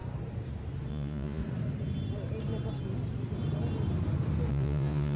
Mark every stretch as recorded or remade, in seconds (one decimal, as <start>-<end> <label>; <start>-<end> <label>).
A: 0.0-0.9 recorded; 0.9-1.4 remade; 1.4-4.5 recorded; 4.5-5.2 remade